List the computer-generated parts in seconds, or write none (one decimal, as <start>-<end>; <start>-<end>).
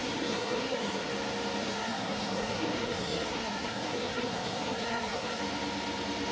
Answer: 0.0-1.1; 1.6-5.4